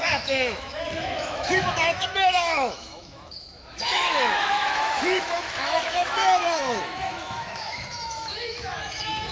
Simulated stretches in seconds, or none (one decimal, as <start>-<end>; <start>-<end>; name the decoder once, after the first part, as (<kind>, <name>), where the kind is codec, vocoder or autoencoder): 0.0-9.3 (autoencoder, DAC-VAE)